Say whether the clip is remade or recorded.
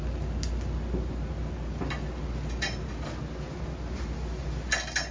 recorded